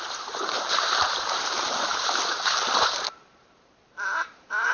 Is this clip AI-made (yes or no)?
yes